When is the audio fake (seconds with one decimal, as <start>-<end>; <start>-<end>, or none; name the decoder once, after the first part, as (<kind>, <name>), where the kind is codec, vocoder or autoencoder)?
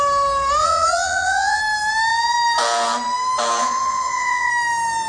0.6-1.6 (vocoder, Vocos); 3.6-4.5